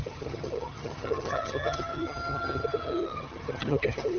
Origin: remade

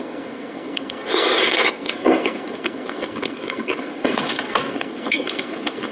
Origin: remade